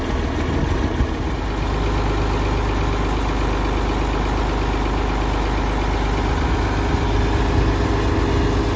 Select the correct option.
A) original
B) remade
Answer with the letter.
A